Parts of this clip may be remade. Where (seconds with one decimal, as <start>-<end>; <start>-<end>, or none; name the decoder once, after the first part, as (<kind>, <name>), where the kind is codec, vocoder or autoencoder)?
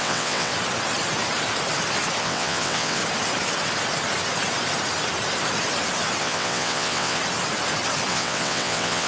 0.0-0.5 (vocoder, WaveNeXt); 2.2-3.0; 6.2-7.2; 8.1-9.1